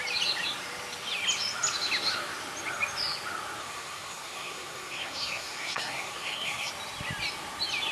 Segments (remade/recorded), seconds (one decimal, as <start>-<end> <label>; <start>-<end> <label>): 0.0-3.6 recorded; 3.6-6.7 remade; 6.7-7.9 recorded